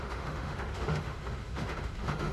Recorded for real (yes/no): no